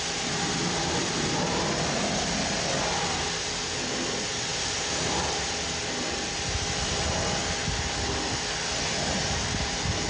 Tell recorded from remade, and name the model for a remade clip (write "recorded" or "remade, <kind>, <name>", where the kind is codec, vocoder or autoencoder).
recorded